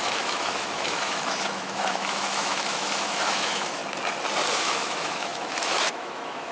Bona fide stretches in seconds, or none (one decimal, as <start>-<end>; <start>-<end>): 3.8-4.5